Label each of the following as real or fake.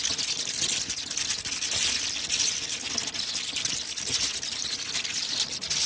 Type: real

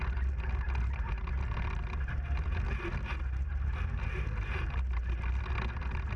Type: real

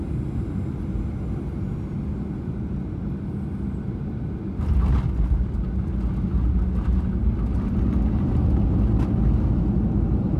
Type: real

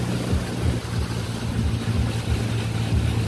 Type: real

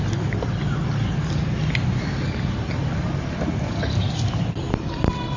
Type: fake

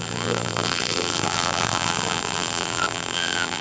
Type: fake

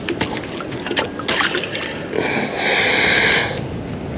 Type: real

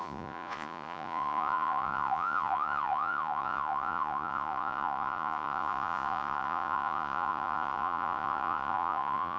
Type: fake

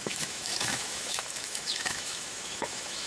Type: fake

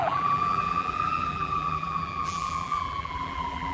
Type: fake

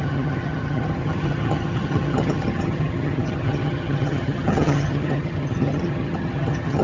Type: fake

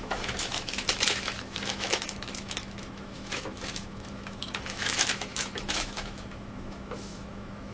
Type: fake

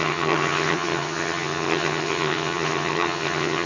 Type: fake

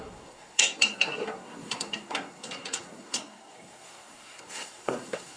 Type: fake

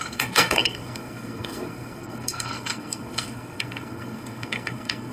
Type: fake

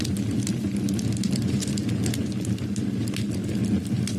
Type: real